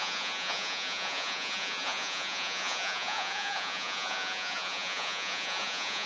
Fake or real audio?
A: fake